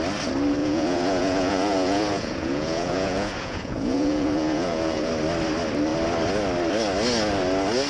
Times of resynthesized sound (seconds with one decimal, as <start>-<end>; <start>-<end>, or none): 0.6-5.1